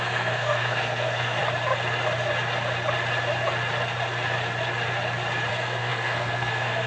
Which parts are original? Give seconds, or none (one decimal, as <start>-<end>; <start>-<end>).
1.4-5.5